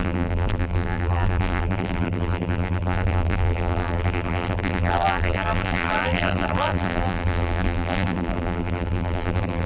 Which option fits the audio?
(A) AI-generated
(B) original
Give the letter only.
A